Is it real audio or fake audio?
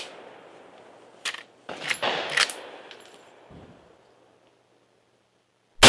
real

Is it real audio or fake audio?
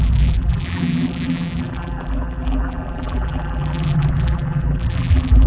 fake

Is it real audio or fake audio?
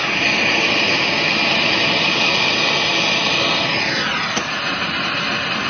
real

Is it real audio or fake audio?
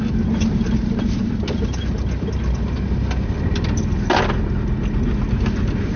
real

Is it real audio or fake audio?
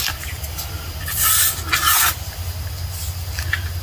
real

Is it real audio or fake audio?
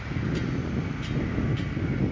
real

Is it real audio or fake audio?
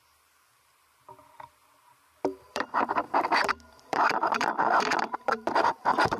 fake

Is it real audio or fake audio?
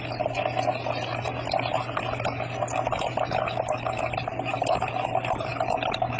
real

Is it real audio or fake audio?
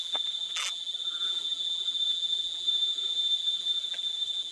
fake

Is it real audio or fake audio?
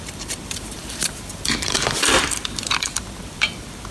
fake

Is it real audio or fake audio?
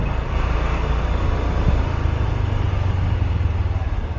real